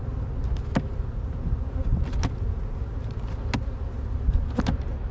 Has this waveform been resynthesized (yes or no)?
no